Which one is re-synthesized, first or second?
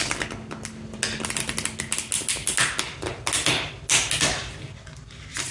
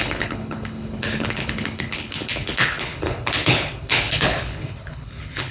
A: second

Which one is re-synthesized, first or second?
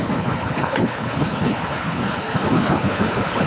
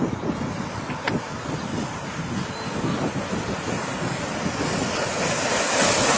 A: first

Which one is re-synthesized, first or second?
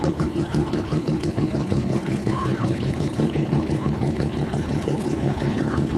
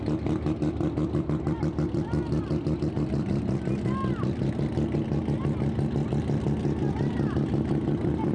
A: first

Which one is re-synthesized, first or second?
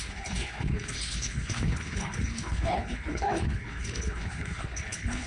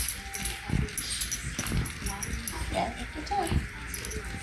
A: first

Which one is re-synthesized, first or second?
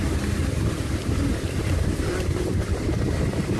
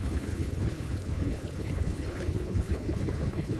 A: second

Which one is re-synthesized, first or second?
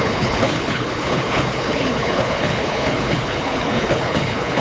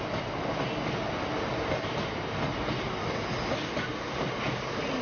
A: first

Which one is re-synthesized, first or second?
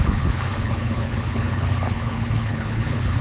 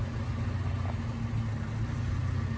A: first